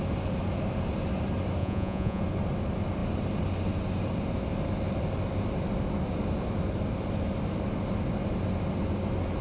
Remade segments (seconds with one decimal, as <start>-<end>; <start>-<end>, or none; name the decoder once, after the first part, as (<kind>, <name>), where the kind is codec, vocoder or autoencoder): 1.6-2.2 (vocoder, Vocos)